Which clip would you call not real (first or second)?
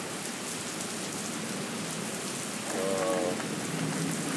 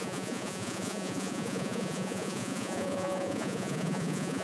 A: second